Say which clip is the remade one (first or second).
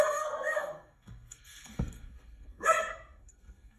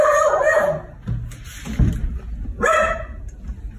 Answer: first